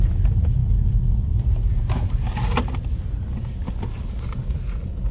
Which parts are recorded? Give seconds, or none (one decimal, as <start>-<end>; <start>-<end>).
0.0-5.1